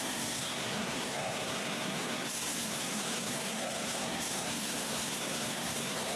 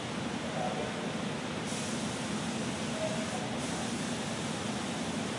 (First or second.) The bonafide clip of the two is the second